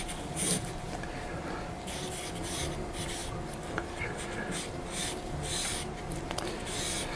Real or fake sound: real